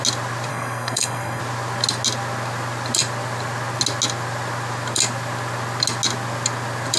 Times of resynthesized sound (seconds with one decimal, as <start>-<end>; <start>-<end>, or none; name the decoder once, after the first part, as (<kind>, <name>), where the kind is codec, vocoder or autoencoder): 0.5-1.4 (codec, SNAC)